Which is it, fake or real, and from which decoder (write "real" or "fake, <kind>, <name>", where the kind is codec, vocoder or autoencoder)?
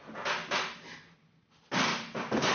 real